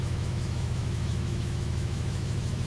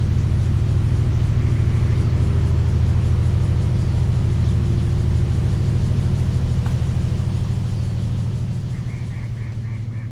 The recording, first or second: second